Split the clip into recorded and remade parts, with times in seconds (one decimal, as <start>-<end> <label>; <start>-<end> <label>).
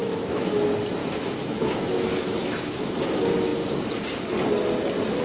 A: 0.0-0.5 remade; 0.5-1.0 recorded; 1.0-3.0 remade; 3.0-5.2 recorded